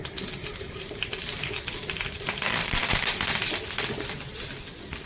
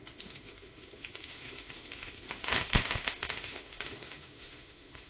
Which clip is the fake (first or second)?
second